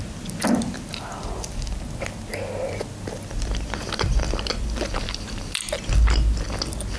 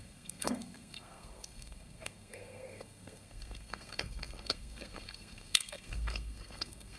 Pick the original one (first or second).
first